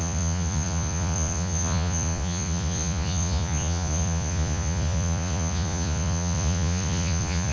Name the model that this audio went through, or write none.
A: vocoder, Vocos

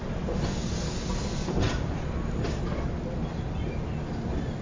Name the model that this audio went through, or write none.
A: none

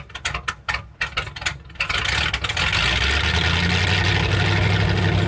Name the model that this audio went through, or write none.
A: none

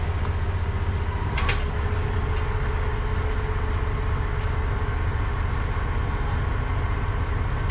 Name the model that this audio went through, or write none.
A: none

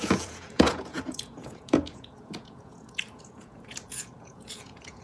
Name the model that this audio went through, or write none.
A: vocoder, Vocos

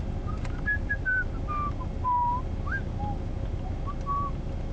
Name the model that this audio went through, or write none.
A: none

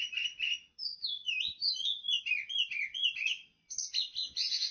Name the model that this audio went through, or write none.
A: none